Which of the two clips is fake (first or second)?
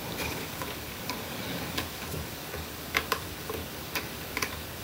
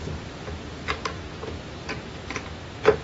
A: first